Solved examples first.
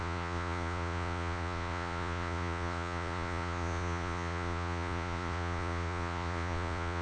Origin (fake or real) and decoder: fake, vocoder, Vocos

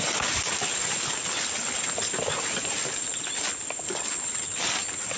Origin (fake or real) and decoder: real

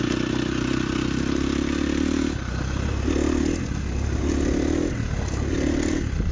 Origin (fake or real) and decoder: real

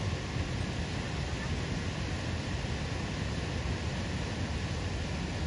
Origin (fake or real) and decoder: real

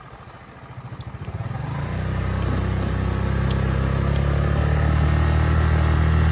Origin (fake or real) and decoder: real